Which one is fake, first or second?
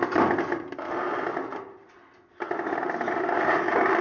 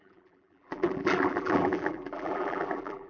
second